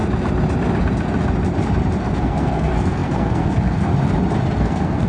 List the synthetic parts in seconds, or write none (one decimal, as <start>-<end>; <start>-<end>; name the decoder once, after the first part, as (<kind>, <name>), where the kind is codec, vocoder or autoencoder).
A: 2.0-3.9 (codec, SNAC); 4.6-5.1